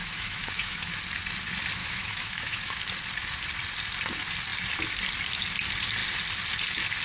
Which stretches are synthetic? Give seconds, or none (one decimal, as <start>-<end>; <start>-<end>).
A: 0.0-1.0; 1.8-2.8